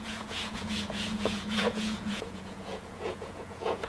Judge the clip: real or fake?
fake